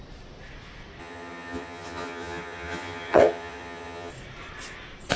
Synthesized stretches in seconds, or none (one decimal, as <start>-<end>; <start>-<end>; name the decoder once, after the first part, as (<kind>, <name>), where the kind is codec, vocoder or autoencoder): 1.0-4.1 (vocoder, HiFi-GAN)